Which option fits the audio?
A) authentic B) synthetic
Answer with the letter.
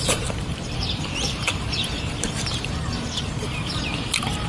B